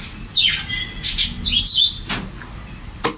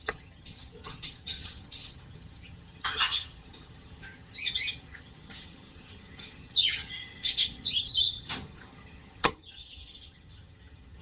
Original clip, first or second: first